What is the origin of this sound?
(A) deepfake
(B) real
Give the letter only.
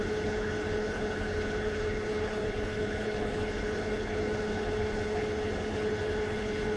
A